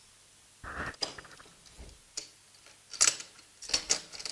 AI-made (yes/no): no